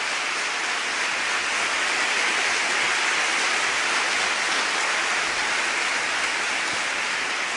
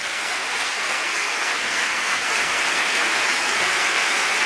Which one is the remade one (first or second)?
second